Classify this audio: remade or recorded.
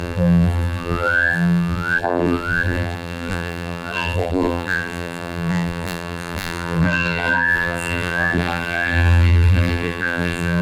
remade